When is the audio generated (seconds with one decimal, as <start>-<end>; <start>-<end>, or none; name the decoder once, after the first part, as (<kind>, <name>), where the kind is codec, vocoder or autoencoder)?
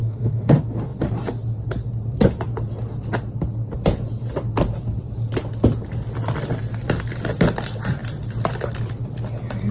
0.0-0.5 (autoencoder, DAC-VAE)